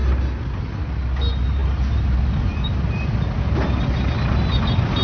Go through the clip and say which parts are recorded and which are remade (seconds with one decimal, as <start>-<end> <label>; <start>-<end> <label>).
0.0-5.0 recorded